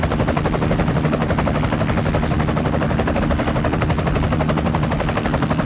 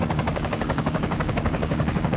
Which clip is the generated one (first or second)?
second